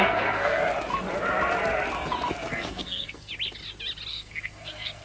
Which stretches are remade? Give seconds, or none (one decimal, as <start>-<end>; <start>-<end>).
0.0-0.6; 2.5-3.3; 4.1-5.0